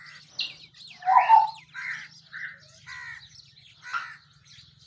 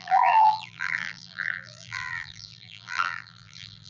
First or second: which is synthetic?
second